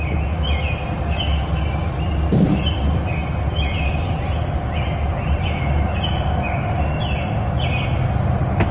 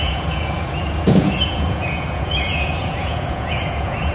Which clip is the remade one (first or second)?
second